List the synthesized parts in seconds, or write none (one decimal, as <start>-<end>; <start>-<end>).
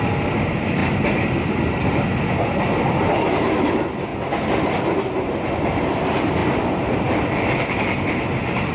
6.4-7.1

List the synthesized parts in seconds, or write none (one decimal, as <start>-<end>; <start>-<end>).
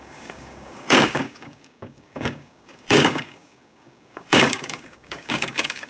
0.0-5.9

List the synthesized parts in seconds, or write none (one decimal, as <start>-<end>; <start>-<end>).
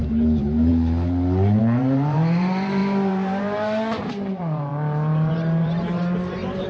0.0-0.7; 1.6-4.7; 5.3-6.7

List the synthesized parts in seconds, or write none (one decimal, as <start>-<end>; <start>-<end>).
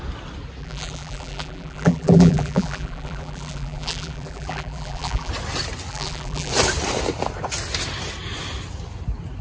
0.6-5.3; 5.9-6.5